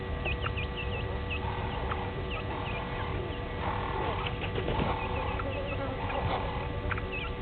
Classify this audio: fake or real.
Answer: real